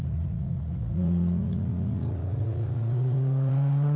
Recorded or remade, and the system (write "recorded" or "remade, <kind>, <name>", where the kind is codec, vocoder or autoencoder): remade, vocoder, Vocos